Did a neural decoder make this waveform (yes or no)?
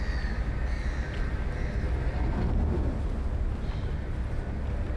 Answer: no